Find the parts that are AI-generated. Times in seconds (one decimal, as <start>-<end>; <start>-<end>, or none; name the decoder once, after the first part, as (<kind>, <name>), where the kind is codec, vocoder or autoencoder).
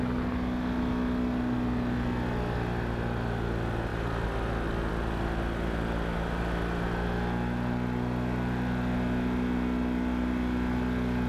none